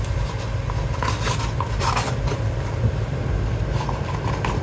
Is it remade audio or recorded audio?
recorded